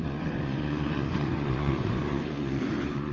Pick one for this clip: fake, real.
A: fake